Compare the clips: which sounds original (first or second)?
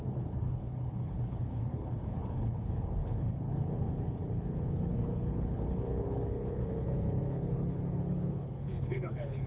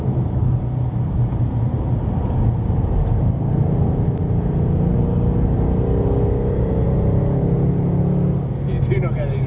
second